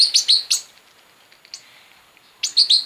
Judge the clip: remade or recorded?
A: recorded